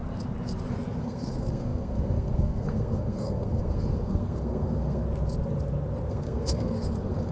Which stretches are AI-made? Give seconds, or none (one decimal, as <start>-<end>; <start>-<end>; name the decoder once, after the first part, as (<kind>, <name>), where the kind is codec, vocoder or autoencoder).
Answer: 1.0-5.0 (codec, SNAC); 6.1-7.3